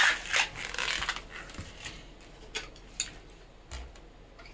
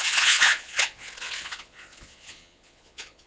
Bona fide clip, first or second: first